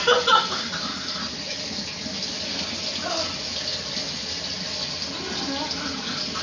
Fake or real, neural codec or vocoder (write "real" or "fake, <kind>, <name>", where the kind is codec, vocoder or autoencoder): real